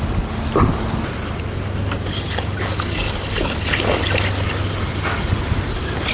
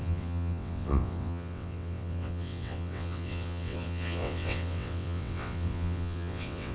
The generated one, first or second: second